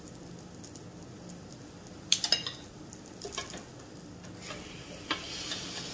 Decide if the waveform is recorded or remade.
recorded